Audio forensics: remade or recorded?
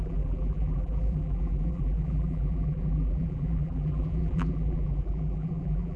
remade